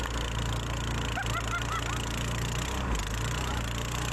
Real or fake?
real